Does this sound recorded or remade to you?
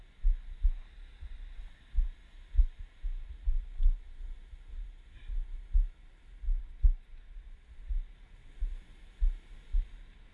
recorded